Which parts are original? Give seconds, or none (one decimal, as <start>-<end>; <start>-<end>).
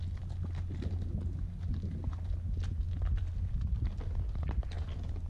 0.0-5.3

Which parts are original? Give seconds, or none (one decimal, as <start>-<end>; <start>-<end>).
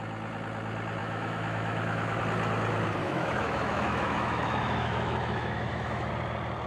0.0-1.0; 2.2-3.0; 6.1-6.7